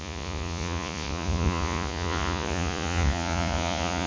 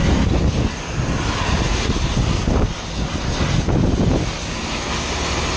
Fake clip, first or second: first